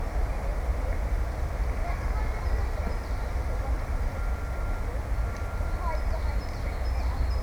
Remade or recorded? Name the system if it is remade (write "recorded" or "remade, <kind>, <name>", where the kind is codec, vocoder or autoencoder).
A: recorded